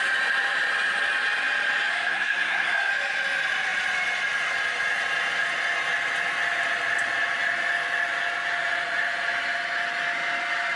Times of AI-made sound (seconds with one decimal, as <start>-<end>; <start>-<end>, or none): 1.9-2.9